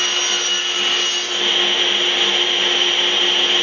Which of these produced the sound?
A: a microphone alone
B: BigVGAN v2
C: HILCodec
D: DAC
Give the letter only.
A